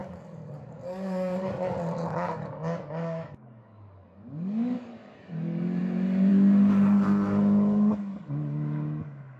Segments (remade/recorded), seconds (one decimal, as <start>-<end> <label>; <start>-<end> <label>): 0.0-5.8 remade; 5.8-6.3 recorded; 6.3-9.4 remade